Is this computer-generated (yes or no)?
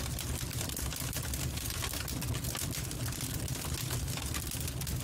no